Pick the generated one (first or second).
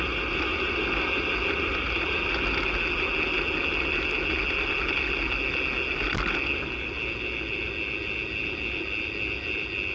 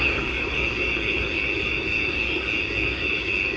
second